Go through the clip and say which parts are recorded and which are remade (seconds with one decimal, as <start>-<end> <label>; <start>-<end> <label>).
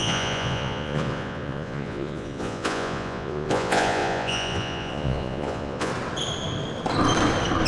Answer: 0.0-5.9 remade; 5.9-7.7 recorded